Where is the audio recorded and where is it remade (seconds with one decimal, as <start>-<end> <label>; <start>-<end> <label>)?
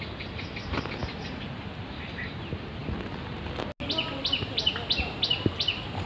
0.0-1.0 recorded; 1.0-1.9 remade; 1.9-6.1 recorded